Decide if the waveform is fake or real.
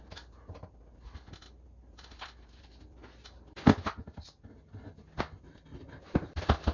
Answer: real